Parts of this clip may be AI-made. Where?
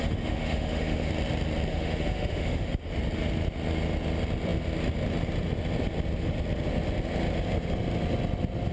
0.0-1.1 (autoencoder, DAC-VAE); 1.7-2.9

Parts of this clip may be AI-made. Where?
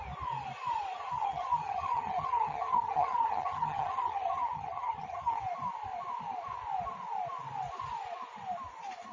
1.0-5.4 (vocoder, HiFi-GAN)